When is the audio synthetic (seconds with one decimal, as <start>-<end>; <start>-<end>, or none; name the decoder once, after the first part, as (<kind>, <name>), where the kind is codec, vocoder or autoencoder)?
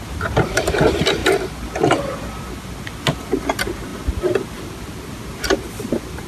none